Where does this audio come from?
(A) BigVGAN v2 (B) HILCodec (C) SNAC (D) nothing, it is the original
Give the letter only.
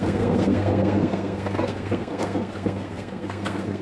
C